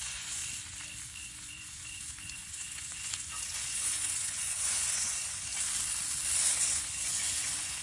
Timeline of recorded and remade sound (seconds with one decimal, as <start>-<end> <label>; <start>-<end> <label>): 0.0-0.4 remade; 0.4-1.2 recorded; 1.2-5.5 remade; 5.5-6.7 recorded; 6.7-7.8 remade